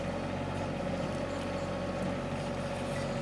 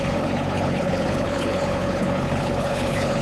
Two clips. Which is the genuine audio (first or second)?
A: first